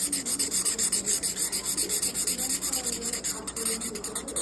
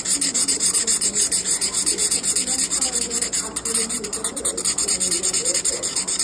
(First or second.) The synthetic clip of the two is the second